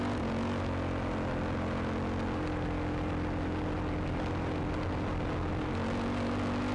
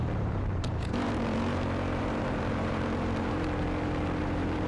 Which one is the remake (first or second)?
second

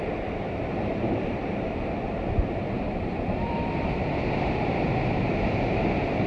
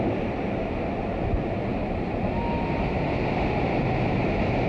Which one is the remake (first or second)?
first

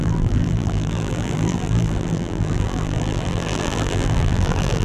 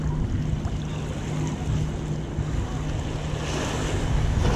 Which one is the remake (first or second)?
first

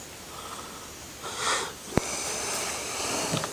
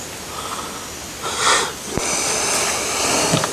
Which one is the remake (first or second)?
first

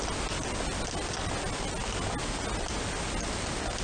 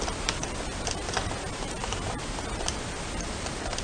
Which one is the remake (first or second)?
second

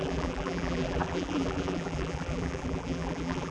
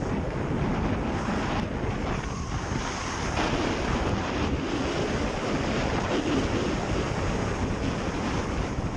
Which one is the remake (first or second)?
first